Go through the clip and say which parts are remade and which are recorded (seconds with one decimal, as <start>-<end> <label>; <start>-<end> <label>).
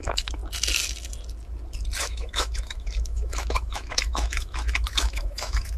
0.0-0.4 remade; 0.4-2.0 recorded; 2.0-5.8 remade